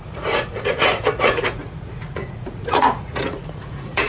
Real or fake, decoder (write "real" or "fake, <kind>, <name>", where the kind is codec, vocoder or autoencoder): fake, vocoder, Vocos